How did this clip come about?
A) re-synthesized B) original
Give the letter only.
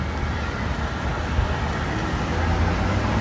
B